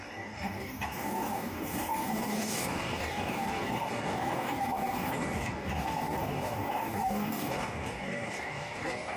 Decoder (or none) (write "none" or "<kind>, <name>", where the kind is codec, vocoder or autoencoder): codec, DAC